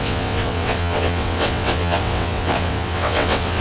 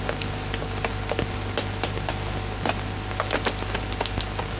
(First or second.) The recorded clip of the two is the second